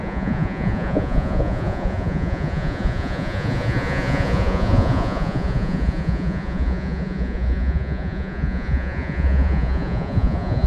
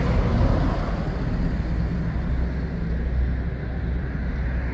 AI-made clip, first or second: first